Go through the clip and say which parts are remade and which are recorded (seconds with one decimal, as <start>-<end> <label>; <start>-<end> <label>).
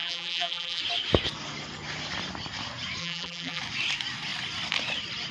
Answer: 0.0-0.8 remade; 0.8-3.0 recorded; 3.0-3.6 remade; 3.6-5.3 recorded